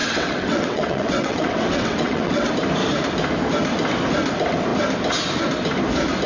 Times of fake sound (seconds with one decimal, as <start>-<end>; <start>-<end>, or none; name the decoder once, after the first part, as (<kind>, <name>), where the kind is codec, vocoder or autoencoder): 0.0-2.5 (vocoder, WaveNeXt)